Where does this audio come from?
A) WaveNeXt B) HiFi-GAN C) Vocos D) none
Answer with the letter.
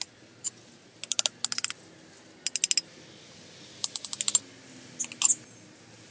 D